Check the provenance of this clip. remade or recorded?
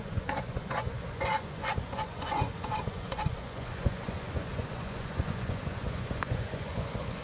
remade